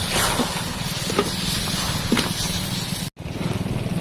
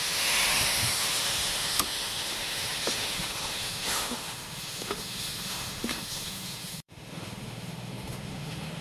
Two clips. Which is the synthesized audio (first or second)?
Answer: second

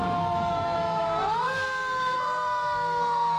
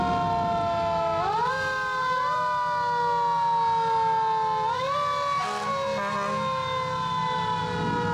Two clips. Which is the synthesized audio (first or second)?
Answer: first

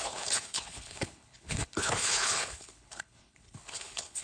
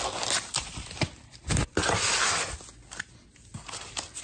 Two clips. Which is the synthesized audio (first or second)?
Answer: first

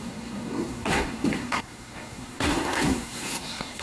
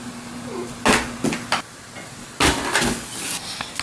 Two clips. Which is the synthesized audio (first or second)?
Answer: first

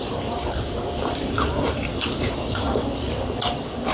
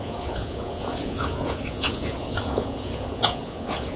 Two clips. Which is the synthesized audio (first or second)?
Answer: second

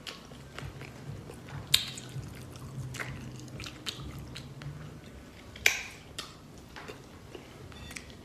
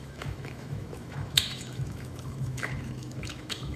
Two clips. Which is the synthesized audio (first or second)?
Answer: second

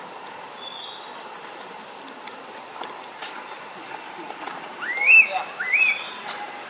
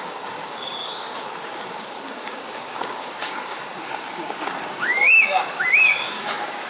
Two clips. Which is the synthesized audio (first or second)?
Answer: second